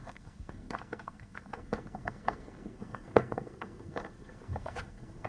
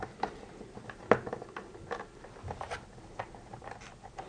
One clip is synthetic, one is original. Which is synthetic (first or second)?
first